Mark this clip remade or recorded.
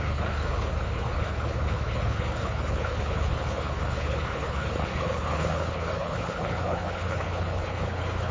remade